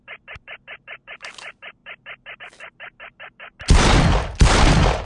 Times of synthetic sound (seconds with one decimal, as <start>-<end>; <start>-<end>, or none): none